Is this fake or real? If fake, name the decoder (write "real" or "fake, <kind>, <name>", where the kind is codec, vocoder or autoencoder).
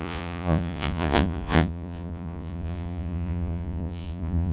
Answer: fake, vocoder, Vocos